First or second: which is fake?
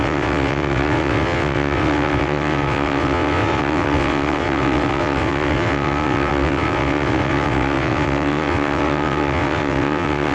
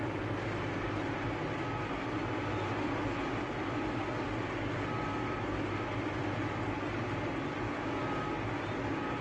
first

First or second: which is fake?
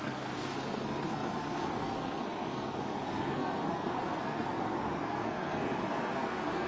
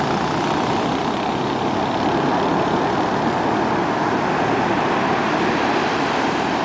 first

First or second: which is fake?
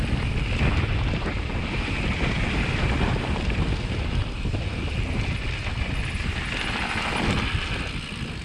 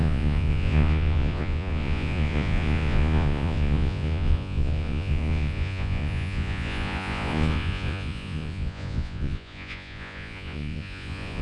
second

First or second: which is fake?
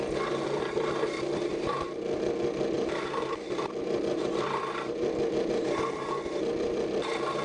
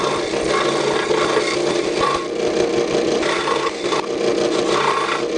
first